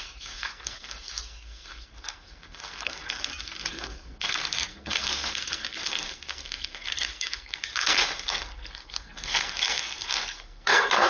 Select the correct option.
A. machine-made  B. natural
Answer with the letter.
A